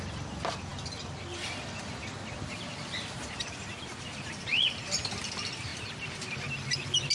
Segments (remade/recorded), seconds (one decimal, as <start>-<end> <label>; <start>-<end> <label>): 0.0-7.1 recorded